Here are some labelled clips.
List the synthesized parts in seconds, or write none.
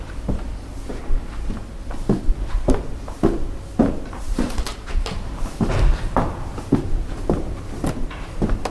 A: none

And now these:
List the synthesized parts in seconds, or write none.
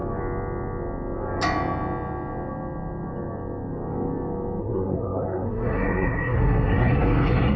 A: 4.6-7.6 (codec, SNAC)